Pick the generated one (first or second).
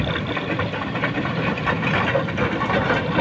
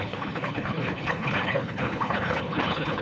second